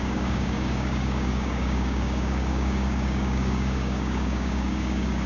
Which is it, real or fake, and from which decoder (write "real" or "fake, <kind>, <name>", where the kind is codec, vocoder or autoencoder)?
fake, codec, DAC